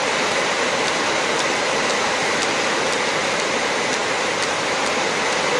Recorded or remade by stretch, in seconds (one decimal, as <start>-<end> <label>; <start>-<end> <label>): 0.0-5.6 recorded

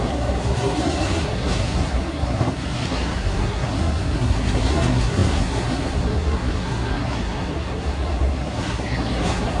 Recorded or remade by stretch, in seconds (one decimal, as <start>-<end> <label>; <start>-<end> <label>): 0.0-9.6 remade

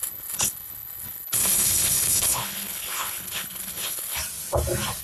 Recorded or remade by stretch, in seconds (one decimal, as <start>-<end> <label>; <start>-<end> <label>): 0.0-4.2 remade; 4.2-5.0 recorded

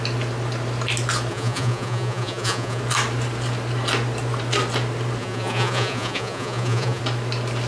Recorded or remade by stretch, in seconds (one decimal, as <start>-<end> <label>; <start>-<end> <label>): 0.0-1.3 recorded; 1.3-2.8 remade; 2.8-5.2 recorded; 5.2-7.0 remade; 7.0-7.7 recorded